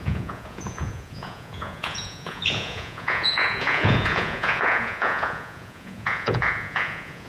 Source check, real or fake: fake